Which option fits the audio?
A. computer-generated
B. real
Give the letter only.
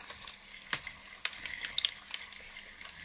B